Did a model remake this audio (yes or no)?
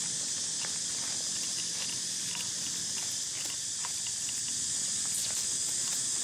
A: no